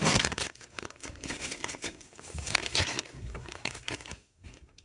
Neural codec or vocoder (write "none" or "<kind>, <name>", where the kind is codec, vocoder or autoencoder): codec, SNAC